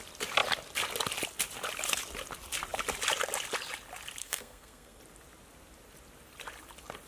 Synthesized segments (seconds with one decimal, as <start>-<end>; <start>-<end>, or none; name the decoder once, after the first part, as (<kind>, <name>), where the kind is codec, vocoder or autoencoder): 4.2-5.0 (codec, SNAC)